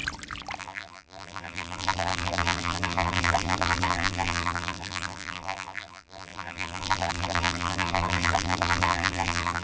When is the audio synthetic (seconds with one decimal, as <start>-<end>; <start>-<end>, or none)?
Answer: 0.6-9.6